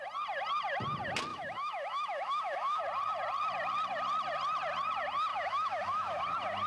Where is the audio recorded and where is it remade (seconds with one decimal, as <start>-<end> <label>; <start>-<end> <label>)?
0.0-1.3 recorded; 1.3-2.8 remade; 2.8-5.3 recorded; 5.3-6.2 remade; 6.2-6.7 recorded